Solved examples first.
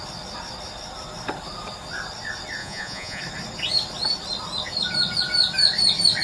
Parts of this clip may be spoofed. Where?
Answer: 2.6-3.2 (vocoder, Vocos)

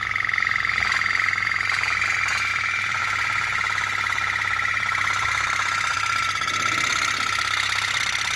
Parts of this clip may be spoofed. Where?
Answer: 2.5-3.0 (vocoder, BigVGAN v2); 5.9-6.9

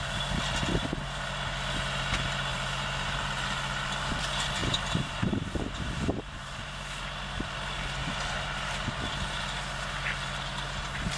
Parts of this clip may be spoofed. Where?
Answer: 2.5-3.3 (vocoder, BigVGAN v2); 4.6-7.0; 8.0-9.0

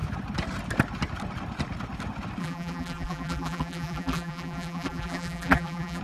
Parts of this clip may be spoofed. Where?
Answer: 2.4-6.0 (vocoder, BigVGAN v2)

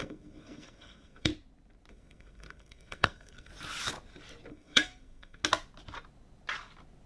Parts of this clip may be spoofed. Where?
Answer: 0.0-1.3 (codec, SNAC); 1.9-3.5; 4.5-5.4

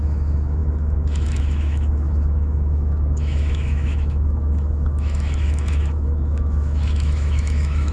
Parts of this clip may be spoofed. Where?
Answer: 0.0-7.9 (autoencoder, DAC-VAE)